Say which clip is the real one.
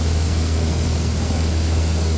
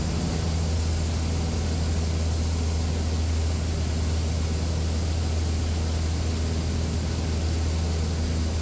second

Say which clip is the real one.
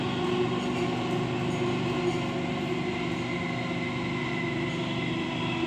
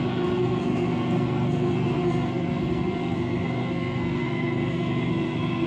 first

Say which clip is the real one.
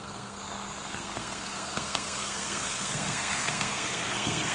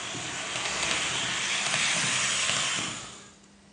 second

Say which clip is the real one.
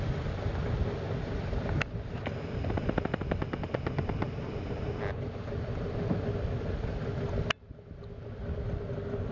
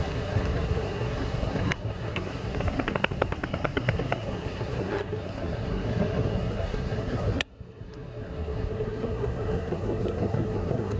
first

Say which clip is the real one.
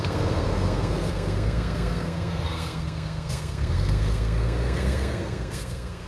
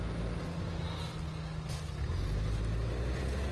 second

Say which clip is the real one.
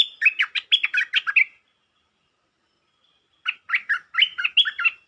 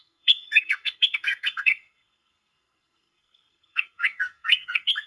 first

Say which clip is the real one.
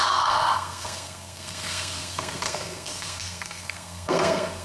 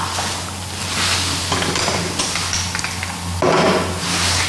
second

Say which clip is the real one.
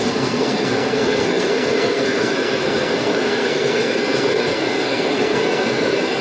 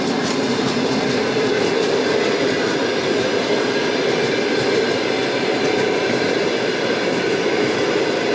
second